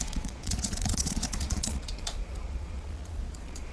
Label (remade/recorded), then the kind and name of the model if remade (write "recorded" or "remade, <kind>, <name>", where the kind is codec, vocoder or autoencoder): remade, vocoder, Vocos